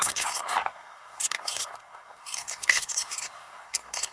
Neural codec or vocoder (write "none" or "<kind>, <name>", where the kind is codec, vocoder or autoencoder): codec, SNAC